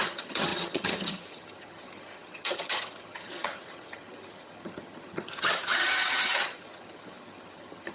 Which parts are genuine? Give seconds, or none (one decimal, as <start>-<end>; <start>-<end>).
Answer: none